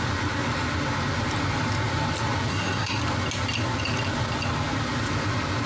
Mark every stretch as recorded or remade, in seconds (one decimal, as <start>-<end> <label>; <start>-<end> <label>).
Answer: 0.0-2.5 recorded; 2.5-3.0 remade; 3.0-5.7 recorded